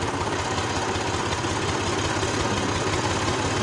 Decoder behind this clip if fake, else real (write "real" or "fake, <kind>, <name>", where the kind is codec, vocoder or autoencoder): real